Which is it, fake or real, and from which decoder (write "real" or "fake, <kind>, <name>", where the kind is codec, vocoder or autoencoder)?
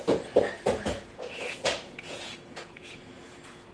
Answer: fake, vocoder, Vocos